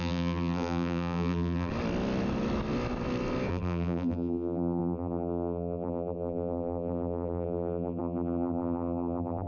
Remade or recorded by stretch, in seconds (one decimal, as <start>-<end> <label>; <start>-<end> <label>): 0.0-1.7 remade; 1.7-3.5 recorded; 3.5-9.5 remade